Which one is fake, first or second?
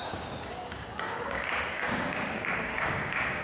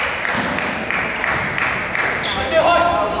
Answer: first